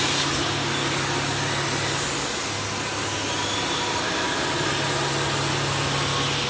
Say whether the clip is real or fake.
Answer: real